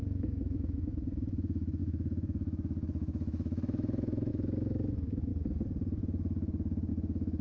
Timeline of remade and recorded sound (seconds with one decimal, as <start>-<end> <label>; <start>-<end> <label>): 0.0-5.3 remade; 5.3-6.9 recorded; 6.9-7.4 remade